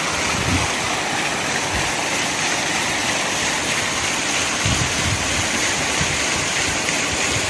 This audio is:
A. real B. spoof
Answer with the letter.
A